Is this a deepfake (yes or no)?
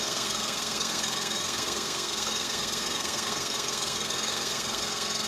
yes